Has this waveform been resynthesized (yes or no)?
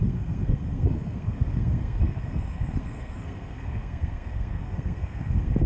yes